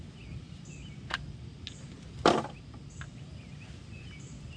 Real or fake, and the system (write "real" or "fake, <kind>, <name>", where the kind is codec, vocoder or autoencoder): real